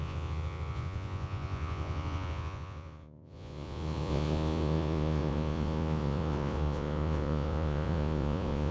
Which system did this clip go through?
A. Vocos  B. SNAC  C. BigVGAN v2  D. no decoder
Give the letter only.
A